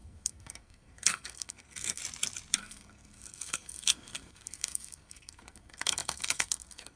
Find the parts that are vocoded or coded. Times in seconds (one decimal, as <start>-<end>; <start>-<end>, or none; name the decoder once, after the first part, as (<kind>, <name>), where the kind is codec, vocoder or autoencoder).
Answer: 0.0-2.0 (codec, SNAC); 2.6-7.0